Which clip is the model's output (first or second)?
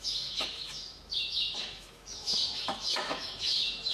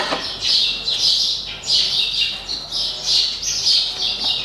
first